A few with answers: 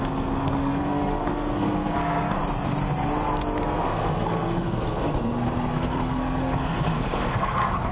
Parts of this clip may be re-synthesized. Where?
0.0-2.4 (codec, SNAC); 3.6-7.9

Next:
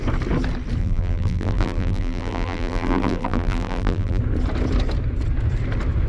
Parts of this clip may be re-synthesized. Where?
0.8-4.2 (vocoder, BigVGAN v2)

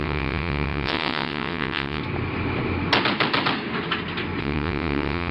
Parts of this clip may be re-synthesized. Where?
0.0-2.0 (vocoder, WaveNeXt); 4.4-5.3

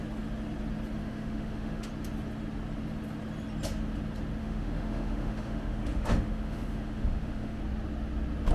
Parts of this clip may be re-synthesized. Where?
1.0-1.9 (autoencoder, DAC-VAE); 4.4-7.6

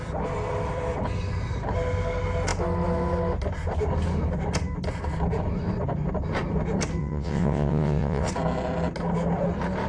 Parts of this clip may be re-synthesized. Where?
7.0-8.3 (vocoder, WaveNeXt)

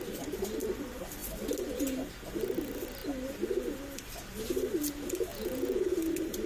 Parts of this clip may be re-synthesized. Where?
5.3-5.9 (vocoder, Vocos)